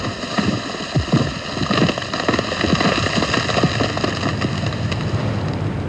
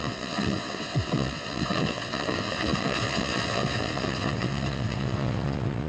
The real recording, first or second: first